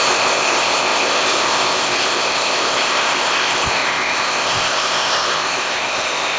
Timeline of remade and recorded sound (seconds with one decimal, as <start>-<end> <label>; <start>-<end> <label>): 0.0-6.4 remade